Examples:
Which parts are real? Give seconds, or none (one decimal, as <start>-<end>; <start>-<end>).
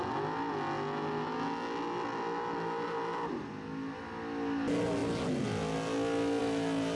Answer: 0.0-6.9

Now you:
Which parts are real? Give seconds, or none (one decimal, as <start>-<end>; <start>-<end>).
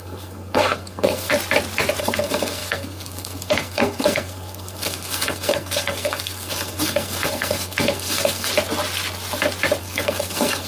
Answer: 1.3-2.0; 8.5-9.8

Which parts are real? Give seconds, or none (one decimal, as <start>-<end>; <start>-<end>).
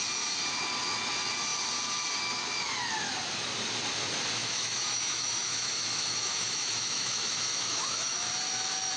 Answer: 0.0-4.4; 8.3-9.0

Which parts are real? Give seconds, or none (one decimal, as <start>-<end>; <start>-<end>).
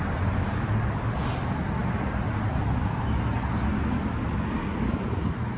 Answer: 0.0-5.6